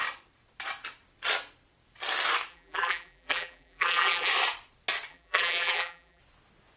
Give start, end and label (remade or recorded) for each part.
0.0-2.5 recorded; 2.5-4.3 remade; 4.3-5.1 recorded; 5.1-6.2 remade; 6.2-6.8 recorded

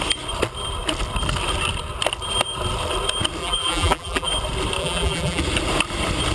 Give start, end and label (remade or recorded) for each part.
0.0-3.4 recorded; 3.4-4.3 remade; 4.3-4.8 recorded; 4.8-5.4 remade; 5.4-6.3 recorded

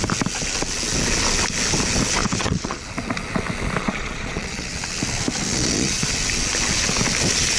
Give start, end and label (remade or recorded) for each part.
0.0-2.2 recorded; 2.2-2.8 remade; 2.8-3.8 recorded; 3.8-4.7 remade; 4.7-5.5 recorded; 5.5-6.1 remade; 6.1-7.6 recorded

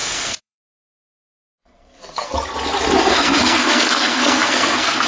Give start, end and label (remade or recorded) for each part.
0.0-2.3 remade; 2.3-3.0 recorded; 3.0-5.1 remade

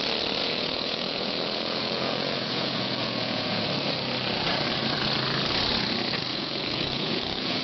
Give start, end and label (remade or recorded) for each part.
0.0-0.4 recorded; 0.4-3.6 remade; 3.6-6.3 recorded; 6.3-7.6 remade

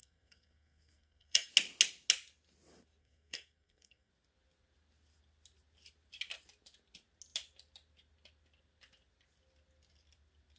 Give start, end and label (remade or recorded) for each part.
0.0-1.5 remade; 1.5-3.0 recorded; 3.0-4.1 remade; 4.1-10.6 recorded

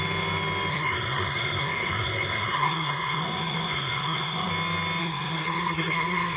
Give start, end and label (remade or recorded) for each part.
0.0-0.7 recorded; 0.7-4.5 remade; 4.5-5.0 recorded; 5.0-6.4 remade

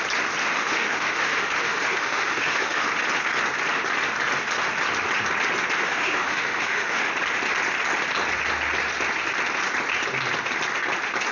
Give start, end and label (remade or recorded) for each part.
0.0-0.4 recorded; 0.4-3.0 remade; 3.0-5.8 recorded; 5.8-7.1 remade; 7.1-11.3 recorded